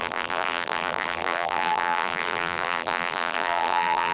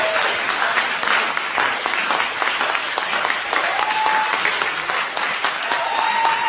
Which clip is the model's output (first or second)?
first